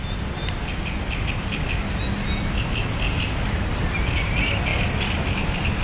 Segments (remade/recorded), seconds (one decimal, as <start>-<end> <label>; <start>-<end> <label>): 0.0-5.8 recorded